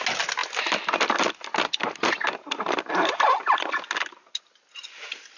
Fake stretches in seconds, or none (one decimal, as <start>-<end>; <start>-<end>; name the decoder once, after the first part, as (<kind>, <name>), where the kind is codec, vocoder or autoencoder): none

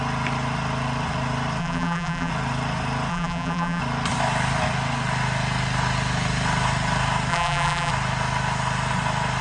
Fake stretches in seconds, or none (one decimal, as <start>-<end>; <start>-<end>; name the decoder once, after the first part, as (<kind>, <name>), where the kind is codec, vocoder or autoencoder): 1.6-2.3 (vocoder, BigVGAN v2); 3.1-3.8; 7.3-7.9